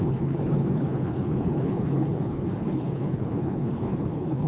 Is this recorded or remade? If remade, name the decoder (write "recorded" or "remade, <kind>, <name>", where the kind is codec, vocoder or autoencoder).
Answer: remade, codec, HILCodec